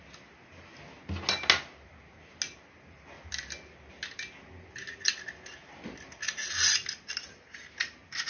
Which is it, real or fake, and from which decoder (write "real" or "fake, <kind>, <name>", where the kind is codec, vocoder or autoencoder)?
real